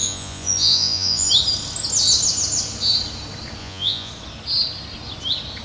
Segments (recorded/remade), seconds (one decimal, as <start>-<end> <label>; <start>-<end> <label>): 0.0-1.3 remade; 1.3-3.6 recorded; 3.6-4.1 remade; 4.1-5.6 recorded